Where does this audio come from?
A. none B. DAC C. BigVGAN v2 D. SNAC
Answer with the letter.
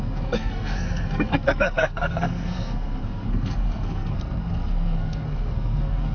D